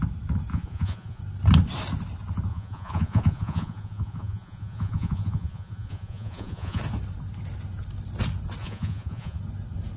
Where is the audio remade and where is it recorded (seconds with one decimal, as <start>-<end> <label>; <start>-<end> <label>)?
0.0-0.5 recorded; 0.5-1.2 remade; 1.2-2.5 recorded; 2.5-6.8 remade; 6.8-8.6 recorded; 8.6-9.4 remade; 9.4-10.0 recorded